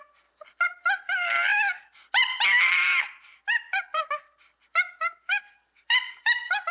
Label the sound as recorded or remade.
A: remade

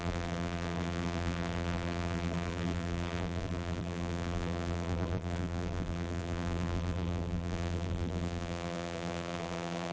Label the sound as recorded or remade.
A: remade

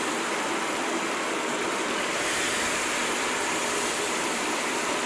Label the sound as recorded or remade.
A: remade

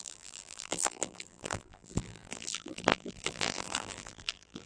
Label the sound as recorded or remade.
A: remade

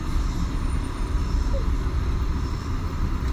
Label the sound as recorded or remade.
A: remade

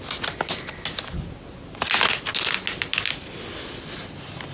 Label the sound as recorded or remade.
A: recorded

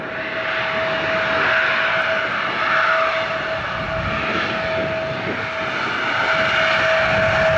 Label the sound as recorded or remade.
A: recorded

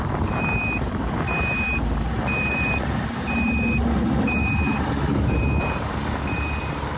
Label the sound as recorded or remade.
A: remade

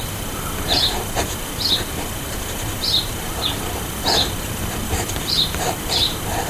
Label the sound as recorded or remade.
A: remade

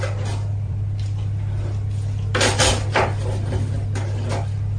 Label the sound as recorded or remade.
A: remade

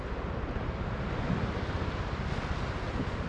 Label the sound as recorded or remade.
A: recorded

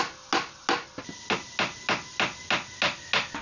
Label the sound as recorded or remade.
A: recorded